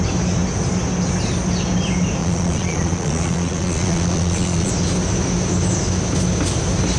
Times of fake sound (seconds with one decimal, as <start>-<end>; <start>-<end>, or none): 2.2-4.7